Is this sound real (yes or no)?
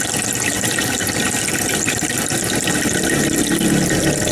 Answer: yes